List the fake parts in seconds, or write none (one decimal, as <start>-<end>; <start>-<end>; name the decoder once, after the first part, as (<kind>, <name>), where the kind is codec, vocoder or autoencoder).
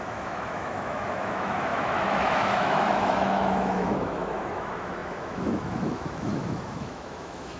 0.0-7.6 (autoencoder, DAC-VAE)